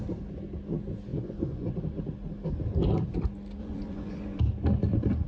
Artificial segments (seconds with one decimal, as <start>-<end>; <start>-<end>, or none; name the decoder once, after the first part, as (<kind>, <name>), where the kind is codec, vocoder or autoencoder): 1.1-1.7 (vocoder, Vocos); 3.6-4.4